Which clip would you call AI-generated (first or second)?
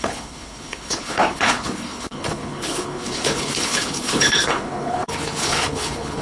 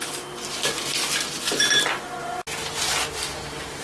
first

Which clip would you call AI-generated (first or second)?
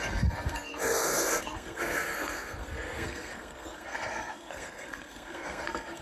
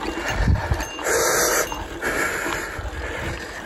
first